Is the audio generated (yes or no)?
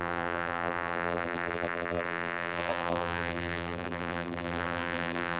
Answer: yes